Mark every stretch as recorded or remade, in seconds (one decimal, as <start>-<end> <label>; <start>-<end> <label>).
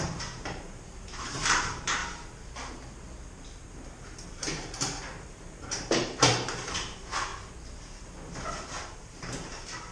0.0-2.0 remade; 2.0-4.3 recorded; 4.3-7.3 remade; 7.3-8.8 recorded; 8.8-9.9 remade